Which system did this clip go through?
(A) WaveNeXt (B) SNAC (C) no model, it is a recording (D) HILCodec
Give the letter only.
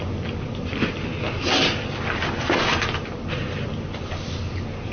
C